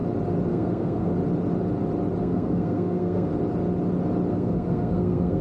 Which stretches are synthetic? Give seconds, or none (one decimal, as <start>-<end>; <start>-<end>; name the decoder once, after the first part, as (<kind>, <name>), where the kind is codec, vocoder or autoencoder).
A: 0.5-1.1 (codec, SNAC); 2.2-3.3; 4.3-5.4